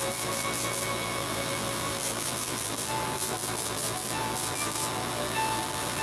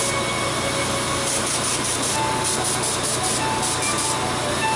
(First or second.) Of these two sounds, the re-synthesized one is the first